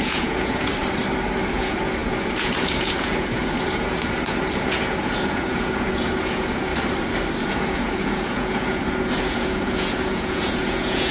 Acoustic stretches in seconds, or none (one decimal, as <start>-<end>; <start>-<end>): 0.7-1.5; 6.7-7.4